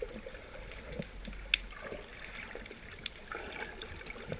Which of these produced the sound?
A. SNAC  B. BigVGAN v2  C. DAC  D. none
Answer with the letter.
D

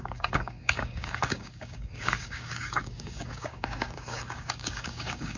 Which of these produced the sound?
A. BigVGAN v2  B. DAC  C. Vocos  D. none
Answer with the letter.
B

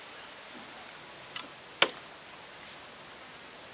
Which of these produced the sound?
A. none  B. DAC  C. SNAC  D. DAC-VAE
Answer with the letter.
A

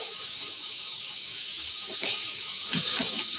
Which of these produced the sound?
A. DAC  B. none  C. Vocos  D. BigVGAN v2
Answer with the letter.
A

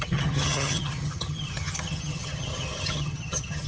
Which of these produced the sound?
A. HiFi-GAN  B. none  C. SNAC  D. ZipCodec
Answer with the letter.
A